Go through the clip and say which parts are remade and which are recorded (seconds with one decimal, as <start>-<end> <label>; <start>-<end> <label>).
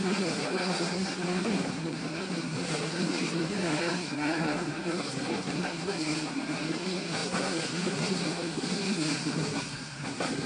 0.0-10.5 remade